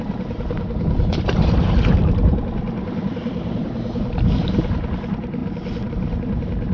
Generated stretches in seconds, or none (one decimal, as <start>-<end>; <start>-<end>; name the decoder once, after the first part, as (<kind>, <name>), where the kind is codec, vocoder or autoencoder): 0.0-5.4 (vocoder, BigVGAN v2); 5.9-6.7

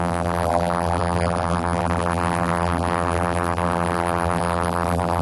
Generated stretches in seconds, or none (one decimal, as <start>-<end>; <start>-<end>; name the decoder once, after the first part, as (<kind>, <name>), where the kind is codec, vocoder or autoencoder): 0.0-5.2 (vocoder, BigVGAN v2)

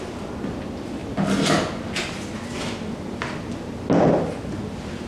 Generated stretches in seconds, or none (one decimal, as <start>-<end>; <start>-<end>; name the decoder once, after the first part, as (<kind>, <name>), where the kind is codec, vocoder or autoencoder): none

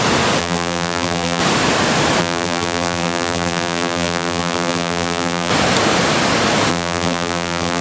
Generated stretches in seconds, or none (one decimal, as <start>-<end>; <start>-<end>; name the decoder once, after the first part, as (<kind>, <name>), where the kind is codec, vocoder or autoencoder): 0.4-1.4 (vocoder, BigVGAN v2); 2.2-5.5; 6.7-7.8